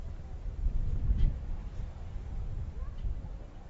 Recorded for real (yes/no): yes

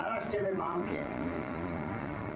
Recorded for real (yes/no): no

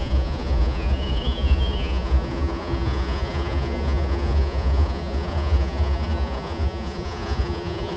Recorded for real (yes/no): no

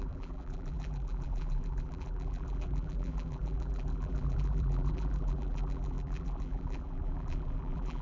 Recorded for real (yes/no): no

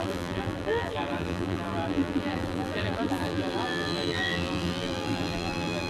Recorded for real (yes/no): no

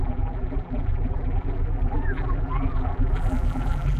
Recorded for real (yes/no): no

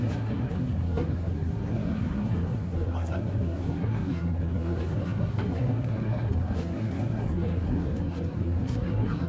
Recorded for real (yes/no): no